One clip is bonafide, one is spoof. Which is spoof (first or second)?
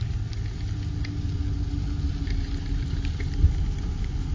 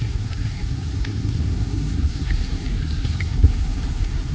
second